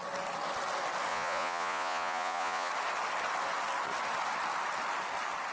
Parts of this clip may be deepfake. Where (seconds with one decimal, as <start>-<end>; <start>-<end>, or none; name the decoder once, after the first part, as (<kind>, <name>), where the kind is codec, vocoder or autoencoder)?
1.1-2.7 (vocoder, Vocos)